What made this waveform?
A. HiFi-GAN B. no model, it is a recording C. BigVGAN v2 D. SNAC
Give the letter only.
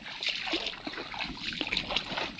B